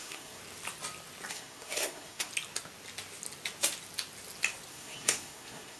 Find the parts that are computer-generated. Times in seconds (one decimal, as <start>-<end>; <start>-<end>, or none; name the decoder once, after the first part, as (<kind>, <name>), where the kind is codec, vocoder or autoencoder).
0.0-0.4 (codec, SNAC); 1.3-2.3; 4.7-5.8